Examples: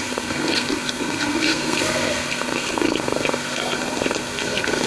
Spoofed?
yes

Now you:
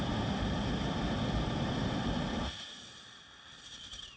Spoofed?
yes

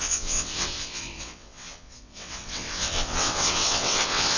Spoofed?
yes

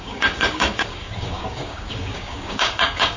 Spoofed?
yes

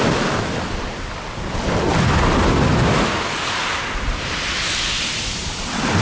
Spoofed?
no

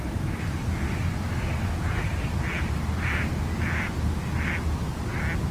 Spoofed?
no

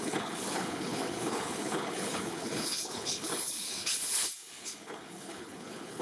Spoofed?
yes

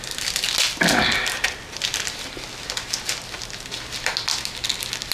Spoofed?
no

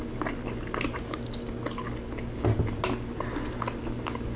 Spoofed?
no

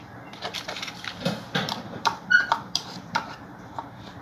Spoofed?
yes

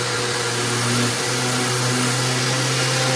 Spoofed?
no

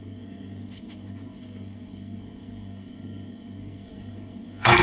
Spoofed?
yes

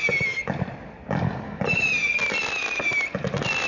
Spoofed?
no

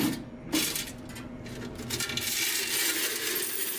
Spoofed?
no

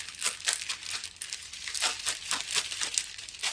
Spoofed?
no